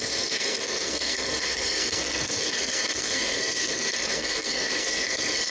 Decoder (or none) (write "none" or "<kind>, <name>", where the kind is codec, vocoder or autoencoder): codec, SNAC